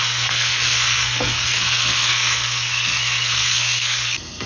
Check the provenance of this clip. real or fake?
fake